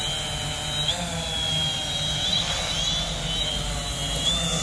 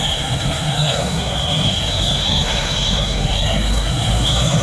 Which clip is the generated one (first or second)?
second